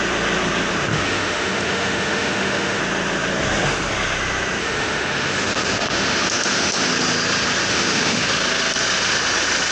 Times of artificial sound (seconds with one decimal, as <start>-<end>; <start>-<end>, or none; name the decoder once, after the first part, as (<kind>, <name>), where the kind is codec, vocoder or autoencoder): 0.9-2.8 (autoencoder, DAC-VAE); 4.6-6.9; 7.7-8.2